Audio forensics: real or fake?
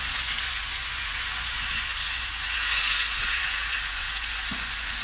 fake